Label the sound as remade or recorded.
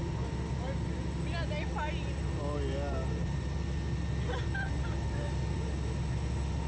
recorded